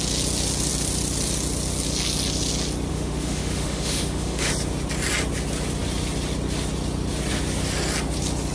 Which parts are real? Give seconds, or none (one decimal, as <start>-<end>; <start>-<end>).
0.0-2.9; 4.5-8.5